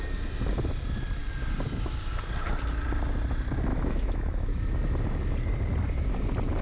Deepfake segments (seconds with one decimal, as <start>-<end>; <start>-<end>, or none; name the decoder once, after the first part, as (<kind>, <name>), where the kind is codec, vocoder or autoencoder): 3.7-4.6 (autoencoder, DAC-VAE)